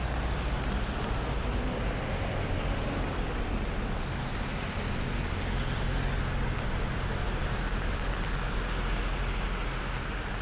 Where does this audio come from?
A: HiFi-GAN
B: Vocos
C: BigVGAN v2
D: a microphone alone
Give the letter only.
D